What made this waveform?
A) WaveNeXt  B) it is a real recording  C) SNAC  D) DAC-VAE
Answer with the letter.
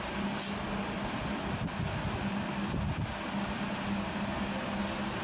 B